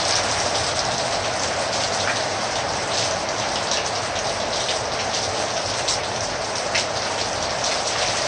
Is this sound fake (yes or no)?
no